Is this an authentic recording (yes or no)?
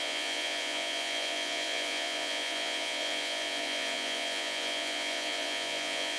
no